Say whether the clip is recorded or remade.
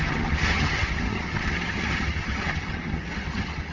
remade